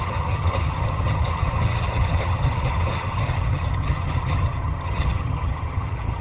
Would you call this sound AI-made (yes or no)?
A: yes